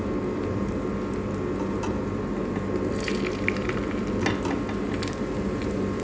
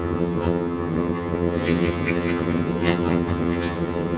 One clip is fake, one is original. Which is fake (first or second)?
second